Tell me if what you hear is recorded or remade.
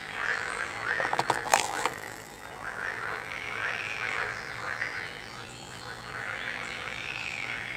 remade